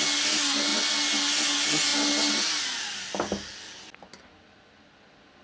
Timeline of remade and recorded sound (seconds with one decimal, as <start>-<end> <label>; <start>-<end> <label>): 0.0-5.4 recorded